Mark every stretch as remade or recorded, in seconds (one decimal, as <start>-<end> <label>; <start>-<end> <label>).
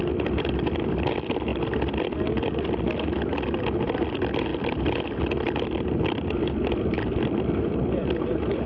0.0-1.5 remade; 1.5-2.4 recorded; 2.4-8.7 remade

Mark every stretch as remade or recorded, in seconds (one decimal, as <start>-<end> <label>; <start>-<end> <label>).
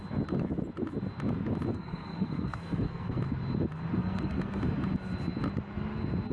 0.0-1.7 recorded; 1.7-3.2 remade; 3.2-4.0 recorded; 4.0-4.6 remade; 4.6-6.3 recorded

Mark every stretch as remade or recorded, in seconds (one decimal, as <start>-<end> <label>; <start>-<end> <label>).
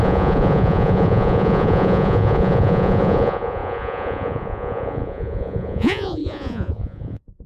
0.0-7.5 remade